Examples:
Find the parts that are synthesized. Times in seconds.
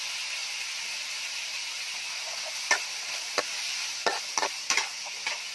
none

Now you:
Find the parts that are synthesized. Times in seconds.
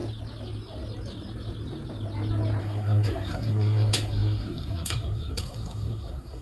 2.6-6.4 (codec, SNAC)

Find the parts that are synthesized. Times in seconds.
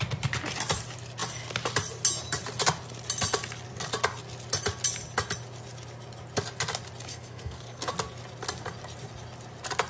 7.1-7.9 (codec, SNAC)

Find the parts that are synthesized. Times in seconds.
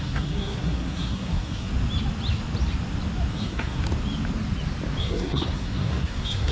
0.0-1.7 (codec, SNAC); 3.3-3.8; 5.0-6.5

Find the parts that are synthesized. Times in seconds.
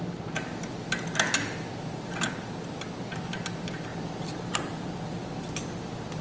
none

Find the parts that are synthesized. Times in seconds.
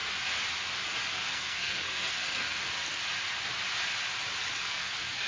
1.1-2.6 (codec, SNAC); 4.6-5.3